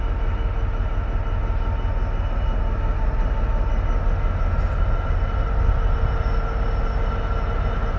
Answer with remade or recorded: recorded